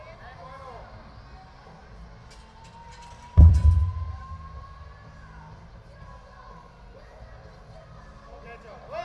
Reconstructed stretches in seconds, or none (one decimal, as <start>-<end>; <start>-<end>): none